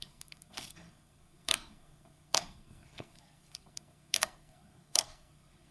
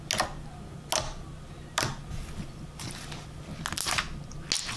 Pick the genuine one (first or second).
second